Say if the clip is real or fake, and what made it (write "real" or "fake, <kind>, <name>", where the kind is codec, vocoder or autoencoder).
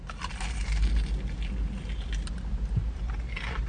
real